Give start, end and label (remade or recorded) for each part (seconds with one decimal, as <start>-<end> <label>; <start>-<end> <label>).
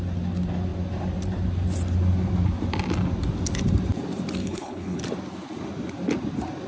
0.0-4.4 recorded; 4.4-5.0 remade; 5.0-6.7 recorded